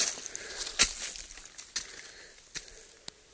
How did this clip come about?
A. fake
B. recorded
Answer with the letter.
B